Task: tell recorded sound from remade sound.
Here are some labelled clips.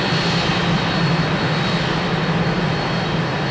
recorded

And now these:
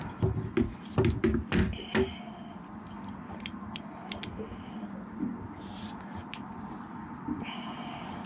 recorded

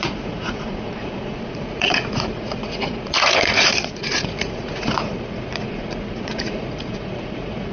remade